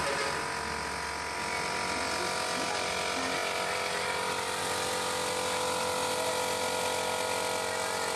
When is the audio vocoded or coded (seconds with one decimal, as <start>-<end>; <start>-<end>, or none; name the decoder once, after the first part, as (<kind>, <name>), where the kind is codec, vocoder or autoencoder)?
none